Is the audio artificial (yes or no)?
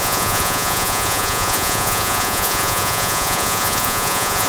yes